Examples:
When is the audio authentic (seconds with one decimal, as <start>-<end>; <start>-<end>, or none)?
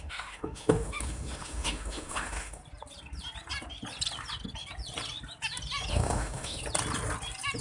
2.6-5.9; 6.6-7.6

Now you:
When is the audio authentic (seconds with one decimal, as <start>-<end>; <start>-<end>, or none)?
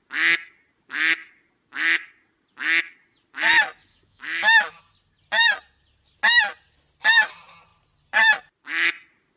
0.0-3.9; 4.8-9.4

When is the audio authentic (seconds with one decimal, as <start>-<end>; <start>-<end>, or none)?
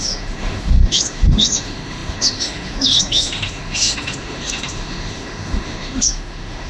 none